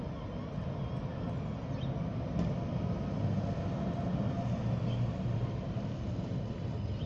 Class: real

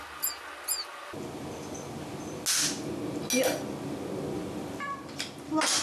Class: real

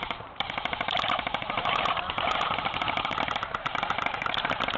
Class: fake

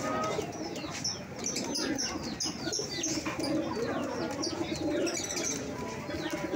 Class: real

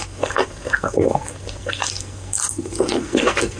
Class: fake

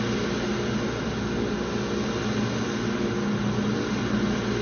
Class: real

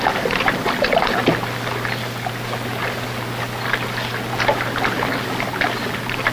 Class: real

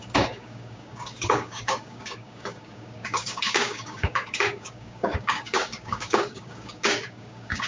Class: fake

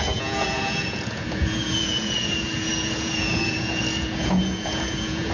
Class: fake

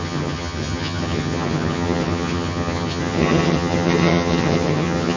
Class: fake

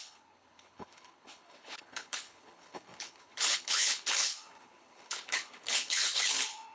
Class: fake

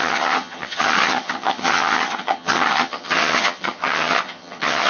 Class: fake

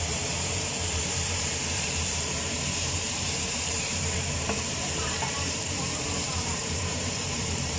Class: fake